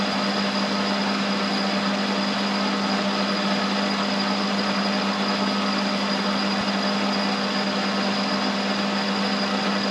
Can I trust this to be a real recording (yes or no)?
yes